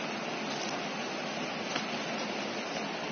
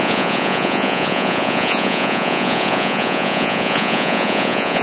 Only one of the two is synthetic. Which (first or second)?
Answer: second